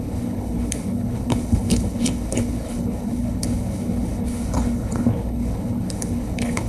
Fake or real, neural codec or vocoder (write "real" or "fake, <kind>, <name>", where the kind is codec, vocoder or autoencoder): fake, codec, HILCodec